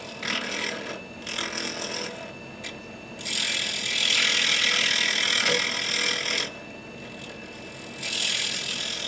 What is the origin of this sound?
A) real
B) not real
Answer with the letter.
A